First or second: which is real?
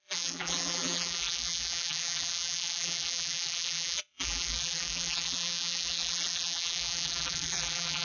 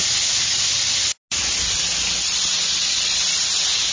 second